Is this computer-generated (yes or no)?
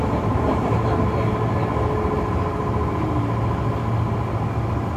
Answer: no